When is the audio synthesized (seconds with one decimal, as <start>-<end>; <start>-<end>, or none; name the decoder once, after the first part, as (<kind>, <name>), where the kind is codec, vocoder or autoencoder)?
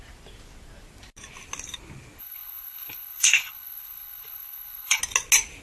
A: 2.2-5.0 (codec, HILCodec)